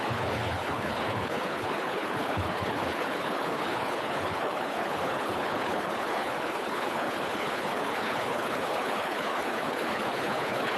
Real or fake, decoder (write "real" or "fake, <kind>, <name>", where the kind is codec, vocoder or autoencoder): fake, codec, HILCodec